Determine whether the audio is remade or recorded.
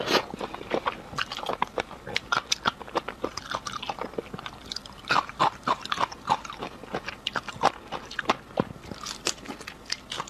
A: recorded